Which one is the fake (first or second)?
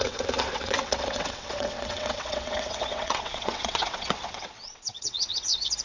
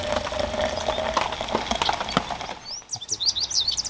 first